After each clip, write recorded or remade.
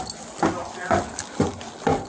recorded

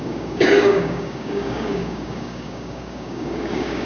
remade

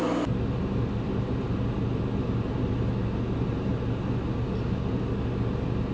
recorded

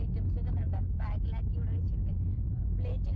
recorded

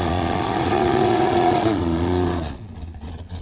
remade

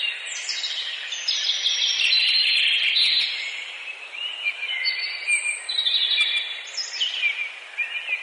recorded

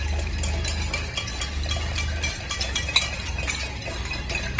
recorded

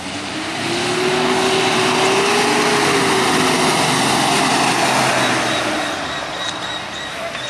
recorded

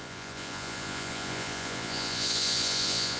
remade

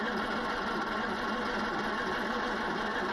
recorded